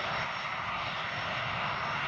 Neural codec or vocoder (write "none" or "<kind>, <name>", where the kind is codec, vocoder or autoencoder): none